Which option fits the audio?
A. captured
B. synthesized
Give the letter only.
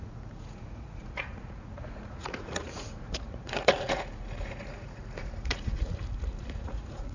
B